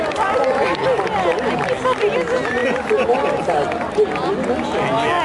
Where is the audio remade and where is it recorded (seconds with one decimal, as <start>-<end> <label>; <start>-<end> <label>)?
0.0-5.2 recorded